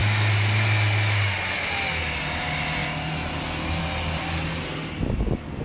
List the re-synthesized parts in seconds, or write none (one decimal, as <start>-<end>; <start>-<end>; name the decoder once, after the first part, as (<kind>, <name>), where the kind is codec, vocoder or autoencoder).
none